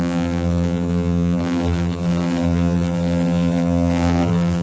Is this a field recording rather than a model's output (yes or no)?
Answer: no